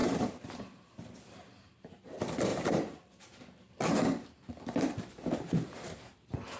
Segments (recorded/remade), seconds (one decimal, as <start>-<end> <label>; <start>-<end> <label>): 0.0-0.6 remade; 0.6-2.5 recorded; 2.5-3.4 remade; 3.4-6.6 recorded